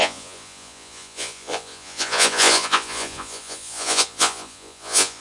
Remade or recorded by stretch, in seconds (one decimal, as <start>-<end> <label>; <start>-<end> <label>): 0.0-5.2 remade

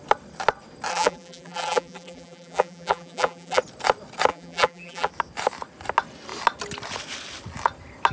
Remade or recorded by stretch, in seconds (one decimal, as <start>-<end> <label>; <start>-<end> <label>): 0.0-0.9 recorded; 0.9-3.6 remade; 3.6-4.3 recorded; 4.3-5.1 remade; 5.1-8.1 recorded